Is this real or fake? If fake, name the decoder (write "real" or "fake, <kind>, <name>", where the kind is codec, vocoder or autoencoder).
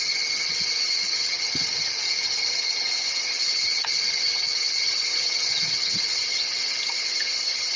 fake, vocoder, HiFi-GAN